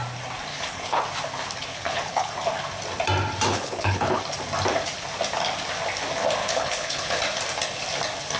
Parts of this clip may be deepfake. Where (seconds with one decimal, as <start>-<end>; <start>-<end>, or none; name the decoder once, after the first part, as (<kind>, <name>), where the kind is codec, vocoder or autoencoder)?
0.5-1.0 (codec, HILCodec); 1.7-2.3; 3.5-4.2; 6.4-7.2